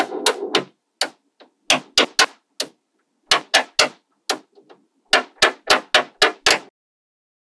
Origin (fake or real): real